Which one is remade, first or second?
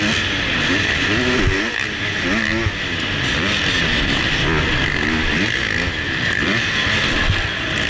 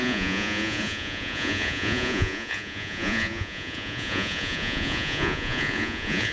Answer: second